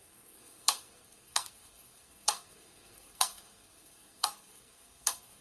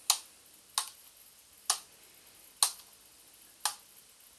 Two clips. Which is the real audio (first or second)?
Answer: second